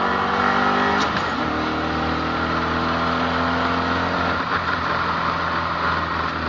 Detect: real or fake real